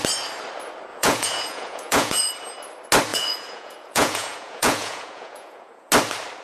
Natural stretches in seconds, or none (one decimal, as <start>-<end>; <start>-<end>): 0.0-0.9; 2.3-3.1; 5.9-6.4